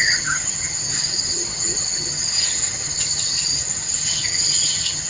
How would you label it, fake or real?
fake